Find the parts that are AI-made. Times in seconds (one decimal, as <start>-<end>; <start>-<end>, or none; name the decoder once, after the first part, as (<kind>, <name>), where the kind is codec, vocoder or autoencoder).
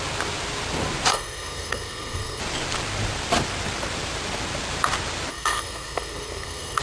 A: 1.1-2.4 (codec, SNAC); 5.3-6.8